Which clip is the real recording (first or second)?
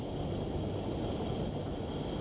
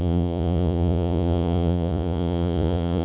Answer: first